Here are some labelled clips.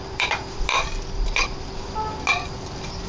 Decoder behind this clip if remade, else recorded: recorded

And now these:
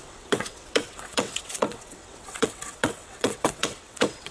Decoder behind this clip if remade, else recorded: remade, vocoder, WaveNeXt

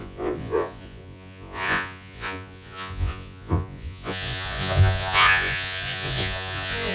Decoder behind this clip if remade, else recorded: remade, vocoder, Vocos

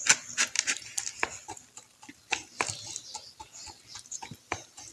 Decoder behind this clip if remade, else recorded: recorded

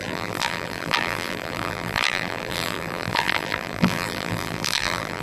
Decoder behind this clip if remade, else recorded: remade, vocoder, BigVGAN v2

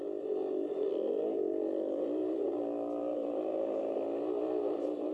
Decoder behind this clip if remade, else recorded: recorded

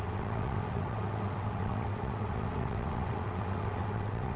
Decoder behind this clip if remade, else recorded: remade, vocoder, WaveNeXt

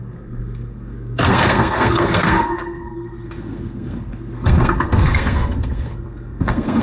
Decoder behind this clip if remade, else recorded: remade, codec, SNAC